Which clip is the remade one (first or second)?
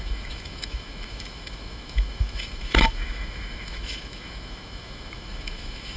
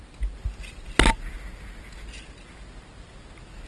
first